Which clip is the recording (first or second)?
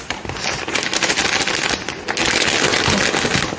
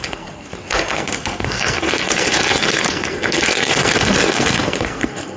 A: first